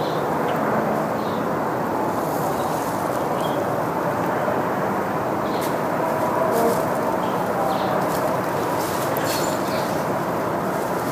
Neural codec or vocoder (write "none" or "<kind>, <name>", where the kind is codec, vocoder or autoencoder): vocoder, BigVGAN v2